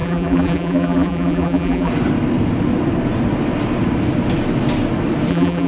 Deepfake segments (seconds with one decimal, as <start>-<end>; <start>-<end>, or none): 0.0-1.9; 5.3-5.7